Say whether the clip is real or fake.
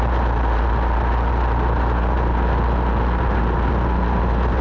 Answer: real